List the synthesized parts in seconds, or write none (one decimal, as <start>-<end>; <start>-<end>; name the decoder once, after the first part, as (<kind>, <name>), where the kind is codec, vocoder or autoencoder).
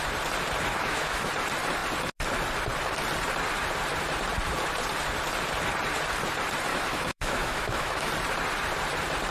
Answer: 0.7-1.3 (autoencoder, DAC-VAE); 6.7-8.1